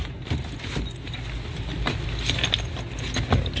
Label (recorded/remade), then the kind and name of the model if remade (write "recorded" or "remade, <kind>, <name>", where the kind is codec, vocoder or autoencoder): recorded